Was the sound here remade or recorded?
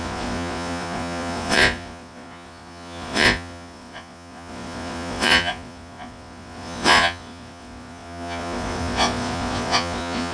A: remade